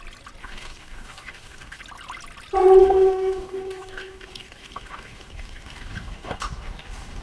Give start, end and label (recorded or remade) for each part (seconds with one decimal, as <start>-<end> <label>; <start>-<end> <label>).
0.0-0.4 recorded; 0.4-1.8 remade; 1.8-2.8 recorded; 2.8-7.2 remade